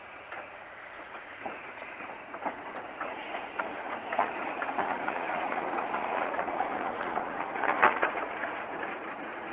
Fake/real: fake